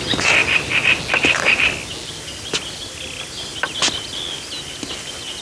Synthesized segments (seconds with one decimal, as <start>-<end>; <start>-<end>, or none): none